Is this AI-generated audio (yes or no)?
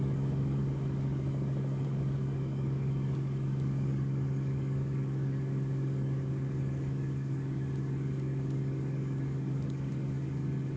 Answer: yes